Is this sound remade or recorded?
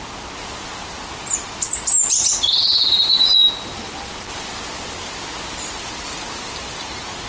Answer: recorded